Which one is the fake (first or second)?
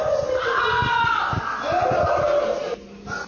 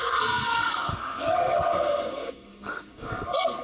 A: second